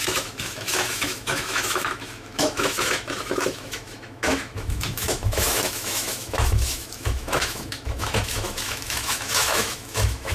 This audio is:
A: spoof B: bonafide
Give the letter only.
A